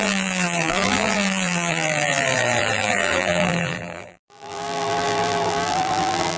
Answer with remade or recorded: remade